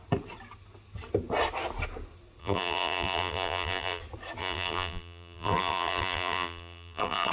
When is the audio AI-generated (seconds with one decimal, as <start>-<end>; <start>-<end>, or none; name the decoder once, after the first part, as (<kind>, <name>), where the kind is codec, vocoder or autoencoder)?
2.4-4.0 (vocoder, BigVGAN v2); 4.4-7.3